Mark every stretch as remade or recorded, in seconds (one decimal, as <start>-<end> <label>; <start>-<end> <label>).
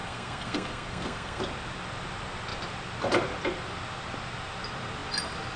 0.0-1.4 remade; 1.4-5.6 recorded